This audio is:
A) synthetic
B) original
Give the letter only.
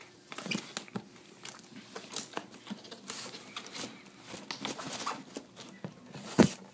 B